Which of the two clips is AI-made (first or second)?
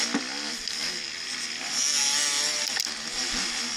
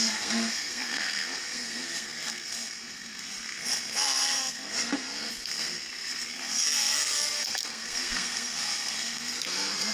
second